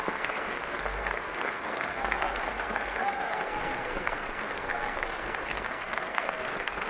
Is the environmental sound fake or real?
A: fake